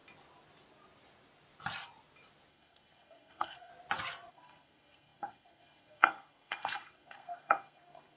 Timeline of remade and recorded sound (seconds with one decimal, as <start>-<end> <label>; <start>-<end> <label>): 0.0-2.5 recorded; 2.5-3.7 remade; 3.7-4.3 recorded; 4.3-8.2 remade